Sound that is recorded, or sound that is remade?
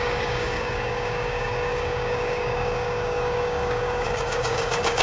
remade